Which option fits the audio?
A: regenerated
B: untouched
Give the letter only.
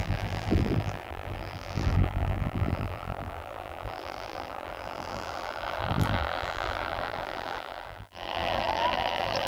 A